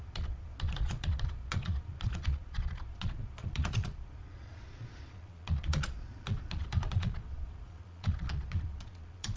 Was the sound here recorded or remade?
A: remade